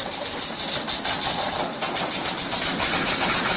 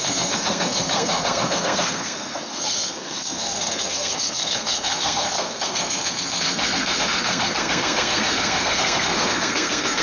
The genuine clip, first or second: first